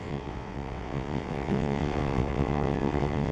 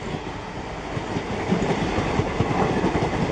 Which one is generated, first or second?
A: first